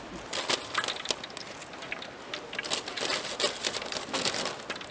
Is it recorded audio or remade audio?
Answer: recorded